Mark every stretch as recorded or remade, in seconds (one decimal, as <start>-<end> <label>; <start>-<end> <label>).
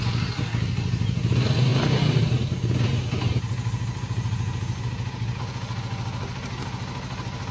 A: 0.0-7.5 recorded